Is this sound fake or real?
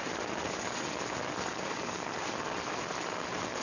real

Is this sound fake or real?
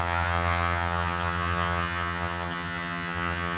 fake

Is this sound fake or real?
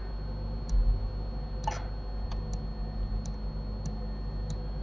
real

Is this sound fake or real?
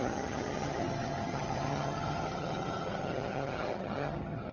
fake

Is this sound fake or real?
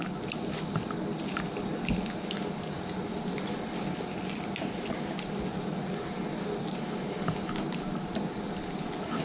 real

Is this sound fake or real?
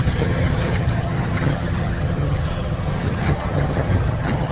fake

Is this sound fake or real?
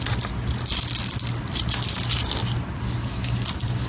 real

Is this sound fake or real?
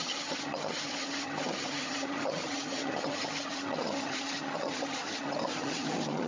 fake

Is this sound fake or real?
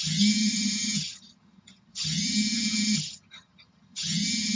fake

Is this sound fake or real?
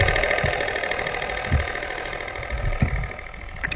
real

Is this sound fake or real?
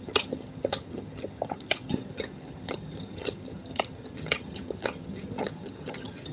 fake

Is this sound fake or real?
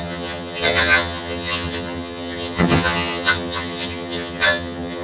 fake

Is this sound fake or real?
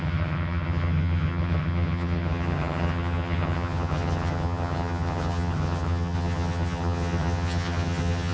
fake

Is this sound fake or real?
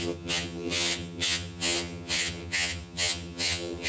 fake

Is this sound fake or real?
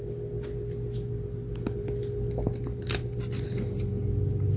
real